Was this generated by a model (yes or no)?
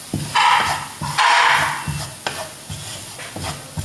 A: no